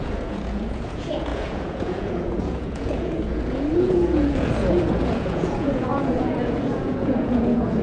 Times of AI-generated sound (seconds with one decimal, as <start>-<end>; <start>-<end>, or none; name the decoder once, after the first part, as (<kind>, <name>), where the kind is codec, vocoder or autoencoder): 0.0-7.8 (vocoder, Vocos)

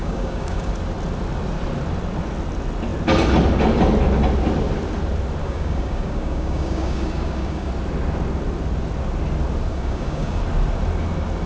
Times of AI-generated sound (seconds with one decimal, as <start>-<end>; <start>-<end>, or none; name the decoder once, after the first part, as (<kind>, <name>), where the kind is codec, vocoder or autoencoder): 0.0-0.7 (codec, DAC); 5.4-7.7; 9.7-10.4

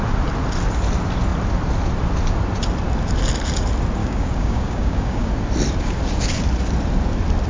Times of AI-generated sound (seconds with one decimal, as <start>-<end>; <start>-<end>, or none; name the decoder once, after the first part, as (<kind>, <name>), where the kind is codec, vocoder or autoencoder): 4.0-5.3 (codec, DAC)

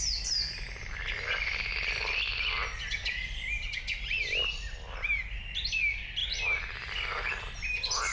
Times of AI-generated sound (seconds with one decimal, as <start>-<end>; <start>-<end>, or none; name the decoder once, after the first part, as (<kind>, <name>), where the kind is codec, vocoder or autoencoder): 6.2-6.9 (vocoder, BigVGAN v2)

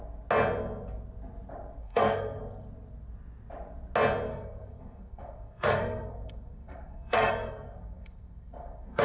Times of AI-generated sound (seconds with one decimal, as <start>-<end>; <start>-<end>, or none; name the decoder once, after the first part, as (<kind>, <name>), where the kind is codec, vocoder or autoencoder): 1.8-2.4 (codec, SNAC); 4.3-9.0

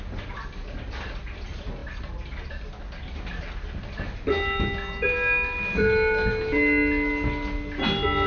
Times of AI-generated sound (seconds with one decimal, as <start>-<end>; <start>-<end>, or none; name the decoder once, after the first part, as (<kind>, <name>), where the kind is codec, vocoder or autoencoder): none